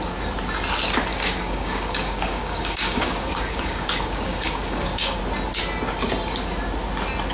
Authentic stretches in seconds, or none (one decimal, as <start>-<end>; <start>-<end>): 0.0-1.1; 5.2-7.3